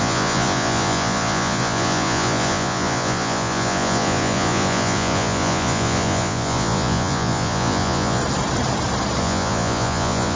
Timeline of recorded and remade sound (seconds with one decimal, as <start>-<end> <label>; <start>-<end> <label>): 0.0-8.2 remade; 8.2-9.2 recorded; 9.2-10.4 remade